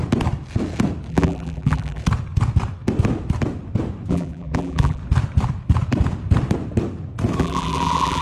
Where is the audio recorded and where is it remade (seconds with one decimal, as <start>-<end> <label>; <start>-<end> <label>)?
0.0-1.1 recorded; 1.1-2.0 remade; 2.0-4.1 recorded; 4.1-5.0 remade; 5.0-7.4 recorded; 7.4-8.2 remade